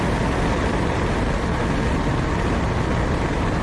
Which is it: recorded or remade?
recorded